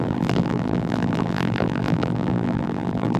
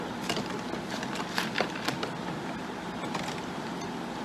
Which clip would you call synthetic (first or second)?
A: first